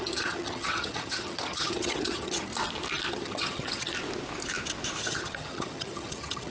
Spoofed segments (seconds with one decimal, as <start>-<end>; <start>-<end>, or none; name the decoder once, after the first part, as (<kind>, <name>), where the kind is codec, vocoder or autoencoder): 0.0-2.5 (vocoder, HiFi-GAN); 3.1-3.9; 5.0-6.5

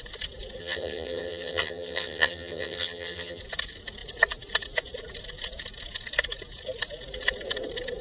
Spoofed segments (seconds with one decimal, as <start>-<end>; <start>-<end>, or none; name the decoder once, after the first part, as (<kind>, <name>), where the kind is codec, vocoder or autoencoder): 0.6-3.4 (vocoder, HiFi-GAN)

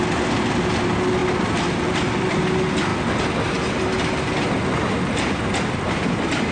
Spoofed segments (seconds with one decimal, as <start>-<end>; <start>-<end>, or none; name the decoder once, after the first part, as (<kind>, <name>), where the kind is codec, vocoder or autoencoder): none